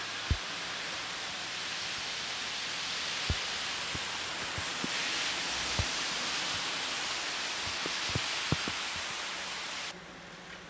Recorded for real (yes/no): yes